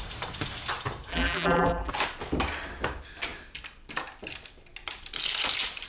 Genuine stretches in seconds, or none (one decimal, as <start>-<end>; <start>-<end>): 0.0-1.1; 1.9-5.9